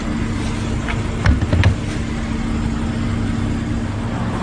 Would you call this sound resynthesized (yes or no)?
no